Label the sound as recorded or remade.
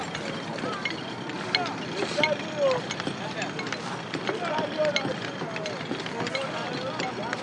recorded